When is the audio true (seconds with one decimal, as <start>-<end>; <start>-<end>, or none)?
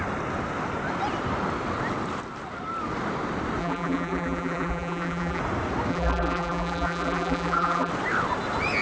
0.0-3.6; 5.4-5.9; 7.9-8.8